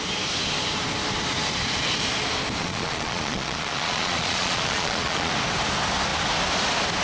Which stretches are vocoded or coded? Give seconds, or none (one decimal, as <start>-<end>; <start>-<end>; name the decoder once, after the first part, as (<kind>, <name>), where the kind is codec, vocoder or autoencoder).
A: 2.6-5.3 (vocoder, Vocos)

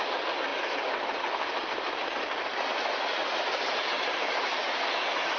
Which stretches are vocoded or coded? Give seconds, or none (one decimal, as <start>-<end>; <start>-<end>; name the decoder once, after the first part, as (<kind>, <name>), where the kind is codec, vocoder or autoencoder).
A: none

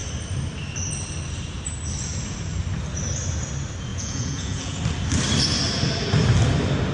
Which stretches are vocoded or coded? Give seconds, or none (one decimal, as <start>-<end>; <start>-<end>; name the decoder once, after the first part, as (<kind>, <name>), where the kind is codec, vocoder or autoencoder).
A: 3.9-4.8 (vocoder, Vocos)

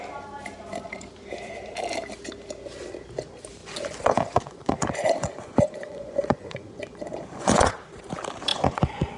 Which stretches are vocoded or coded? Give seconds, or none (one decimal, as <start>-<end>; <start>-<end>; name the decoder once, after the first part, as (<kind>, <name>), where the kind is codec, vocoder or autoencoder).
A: 3.6-7.7 (vocoder, Vocos); 8.5-9.2